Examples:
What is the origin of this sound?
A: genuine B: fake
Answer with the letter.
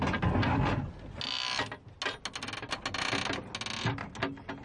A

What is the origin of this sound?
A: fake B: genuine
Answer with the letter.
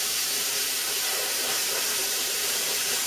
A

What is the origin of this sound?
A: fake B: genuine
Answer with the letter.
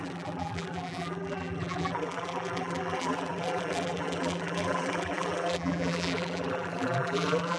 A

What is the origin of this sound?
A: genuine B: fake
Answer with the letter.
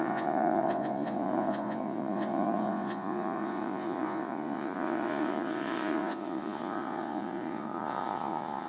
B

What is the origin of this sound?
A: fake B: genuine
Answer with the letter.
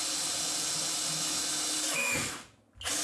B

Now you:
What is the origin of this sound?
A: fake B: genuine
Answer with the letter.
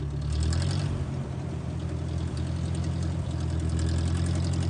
B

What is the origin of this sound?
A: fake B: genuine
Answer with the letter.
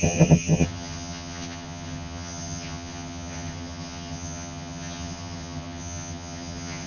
A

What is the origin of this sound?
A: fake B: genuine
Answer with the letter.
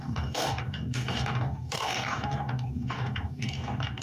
A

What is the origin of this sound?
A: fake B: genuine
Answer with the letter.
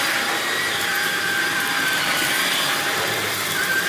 A